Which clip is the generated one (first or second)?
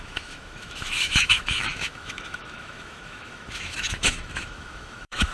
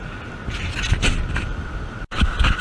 first